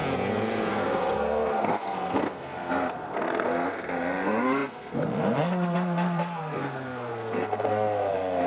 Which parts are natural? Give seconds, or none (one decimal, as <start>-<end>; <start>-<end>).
0.0-0.7

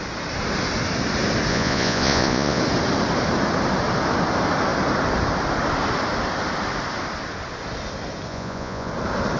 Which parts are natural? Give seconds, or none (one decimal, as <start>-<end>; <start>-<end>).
0.0-1.5; 2.6-8.3; 8.9-9.4

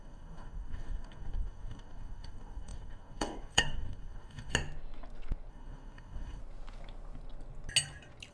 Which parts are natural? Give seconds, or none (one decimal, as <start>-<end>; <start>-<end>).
4.5-5.5; 6.4-8.3

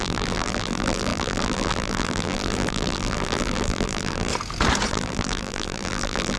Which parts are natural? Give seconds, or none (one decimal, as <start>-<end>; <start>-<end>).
4.3-4.9

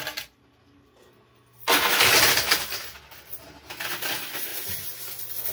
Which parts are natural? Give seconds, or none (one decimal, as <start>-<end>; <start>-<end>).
0.0-4.5; 5.0-5.5

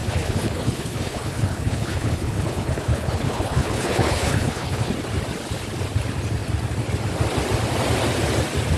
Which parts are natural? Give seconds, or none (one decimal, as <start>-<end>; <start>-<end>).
4.9-8.8